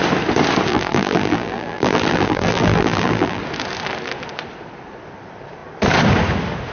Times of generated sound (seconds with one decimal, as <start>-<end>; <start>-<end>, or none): 0.7-3.4